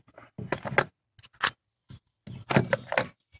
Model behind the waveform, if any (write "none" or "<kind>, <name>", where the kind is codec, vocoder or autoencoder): none